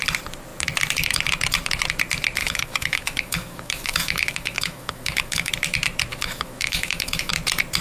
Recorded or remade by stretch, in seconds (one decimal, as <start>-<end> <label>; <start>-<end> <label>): 0.0-2.4 recorded; 2.4-5.5 remade; 5.5-6.1 recorded; 6.1-7.3 remade; 7.3-7.8 recorded